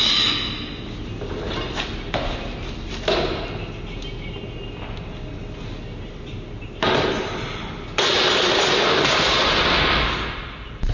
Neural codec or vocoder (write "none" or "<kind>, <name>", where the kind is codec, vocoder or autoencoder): none